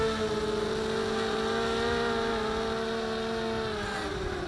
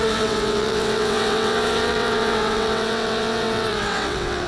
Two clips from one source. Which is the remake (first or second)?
second